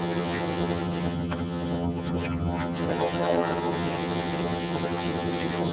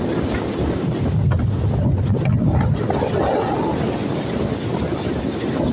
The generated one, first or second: first